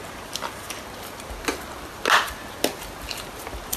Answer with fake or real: real